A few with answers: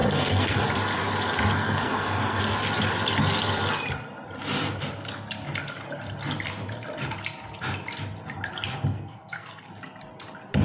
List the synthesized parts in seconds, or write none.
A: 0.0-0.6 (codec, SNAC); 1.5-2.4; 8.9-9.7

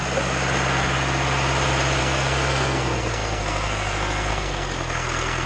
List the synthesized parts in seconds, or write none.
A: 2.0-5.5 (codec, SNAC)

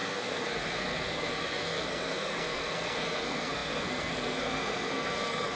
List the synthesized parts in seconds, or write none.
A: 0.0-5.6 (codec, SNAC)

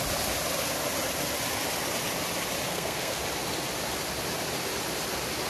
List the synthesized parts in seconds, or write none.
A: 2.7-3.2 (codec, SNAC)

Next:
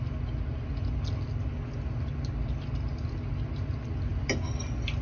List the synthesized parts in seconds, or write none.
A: none

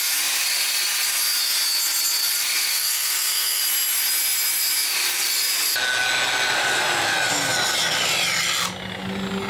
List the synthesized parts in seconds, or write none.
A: 2.7-3.6 (codec, SNAC)

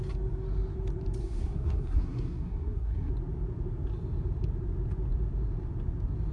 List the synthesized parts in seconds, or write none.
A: 1.2-3.1 (codec, SNAC)